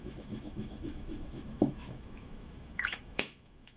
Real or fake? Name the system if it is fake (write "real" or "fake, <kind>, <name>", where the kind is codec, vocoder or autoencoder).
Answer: fake, autoencoder, DAC-VAE